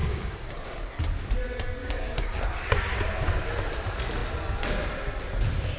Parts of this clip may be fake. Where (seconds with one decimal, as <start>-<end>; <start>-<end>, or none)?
0.0-0.9; 1.8-2.4